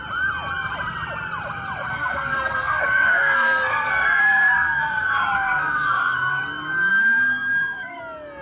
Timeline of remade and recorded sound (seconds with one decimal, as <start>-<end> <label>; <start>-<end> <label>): 0.0-1.9 recorded; 1.9-6.4 remade; 6.4-6.9 recorded; 6.9-8.0 remade; 8.0-8.4 recorded